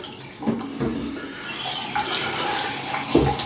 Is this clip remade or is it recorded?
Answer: recorded